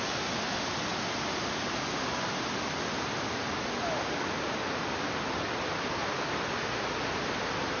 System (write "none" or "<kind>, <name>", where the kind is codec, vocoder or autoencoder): none